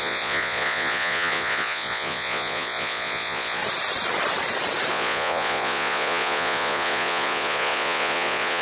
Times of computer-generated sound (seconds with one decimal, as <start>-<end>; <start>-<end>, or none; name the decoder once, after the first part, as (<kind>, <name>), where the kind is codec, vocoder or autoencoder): 0.0-3.6 (vocoder, Vocos); 4.9-8.6